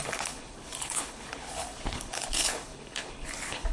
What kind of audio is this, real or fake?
fake